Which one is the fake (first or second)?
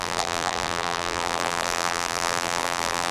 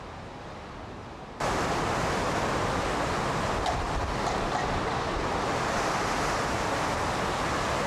first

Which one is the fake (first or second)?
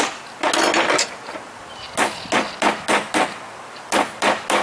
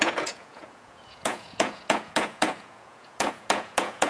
second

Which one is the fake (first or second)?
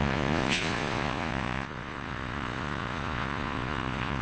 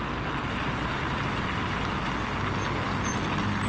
first